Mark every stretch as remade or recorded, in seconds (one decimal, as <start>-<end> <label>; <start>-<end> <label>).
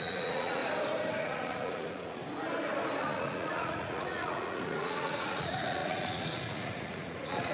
0.0-0.6 remade; 0.6-1.2 recorded; 1.2-2.2 remade; 2.2-3.0 recorded; 3.0-7.5 remade